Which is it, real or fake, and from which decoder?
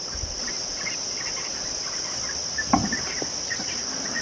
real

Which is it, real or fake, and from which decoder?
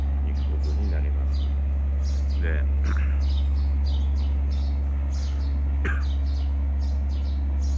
real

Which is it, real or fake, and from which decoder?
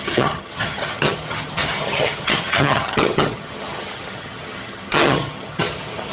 fake, vocoder, HiFi-GAN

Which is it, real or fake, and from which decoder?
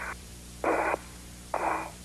fake, vocoder, BigVGAN v2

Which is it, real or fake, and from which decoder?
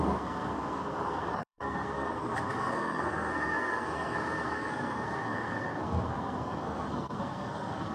fake, codec, SNAC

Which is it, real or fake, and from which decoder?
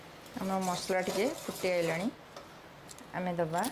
real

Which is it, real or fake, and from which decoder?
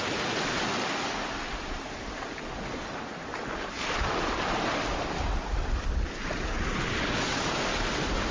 real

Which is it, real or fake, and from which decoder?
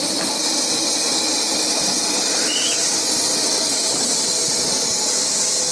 real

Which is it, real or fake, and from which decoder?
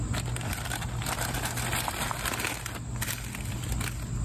real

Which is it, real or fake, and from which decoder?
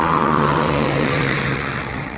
fake, vocoder, WaveNeXt